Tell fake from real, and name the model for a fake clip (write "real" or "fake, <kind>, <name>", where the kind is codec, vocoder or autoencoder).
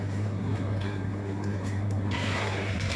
fake, codec, SNAC